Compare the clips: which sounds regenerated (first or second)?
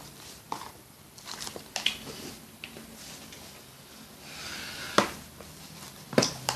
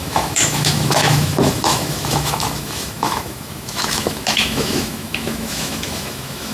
second